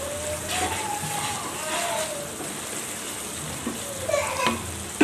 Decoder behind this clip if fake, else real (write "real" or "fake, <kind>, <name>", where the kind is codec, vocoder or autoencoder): real